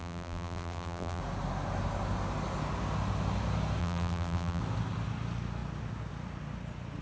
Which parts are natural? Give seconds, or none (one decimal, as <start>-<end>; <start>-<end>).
1.2-3.8; 4.6-7.0